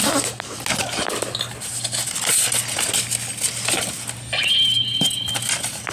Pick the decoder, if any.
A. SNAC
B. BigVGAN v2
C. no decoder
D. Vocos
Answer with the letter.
C